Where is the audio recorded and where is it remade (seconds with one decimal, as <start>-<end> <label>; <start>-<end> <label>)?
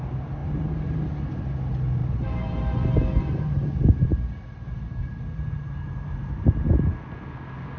0.0-0.4 recorded; 0.4-1.3 remade; 1.3-2.0 recorded; 2.0-6.7 remade; 6.7-7.8 recorded